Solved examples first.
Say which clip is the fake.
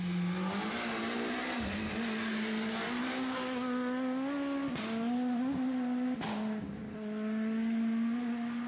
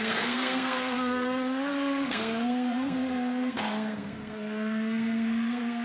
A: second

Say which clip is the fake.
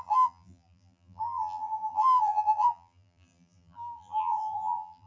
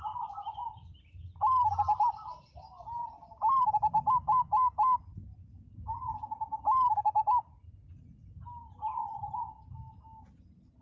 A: first